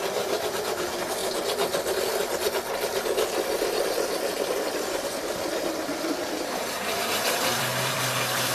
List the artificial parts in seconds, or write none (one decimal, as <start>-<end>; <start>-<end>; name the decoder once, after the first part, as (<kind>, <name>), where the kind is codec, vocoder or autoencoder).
0.0-1.2 (vocoder, BigVGAN v2); 4.1-8.5